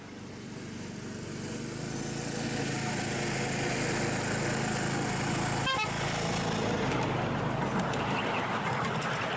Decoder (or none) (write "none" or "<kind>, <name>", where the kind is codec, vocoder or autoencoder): none